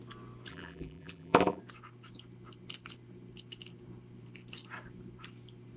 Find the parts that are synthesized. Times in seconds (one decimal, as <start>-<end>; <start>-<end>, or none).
0.5-1.6